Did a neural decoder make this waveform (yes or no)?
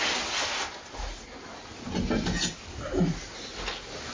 no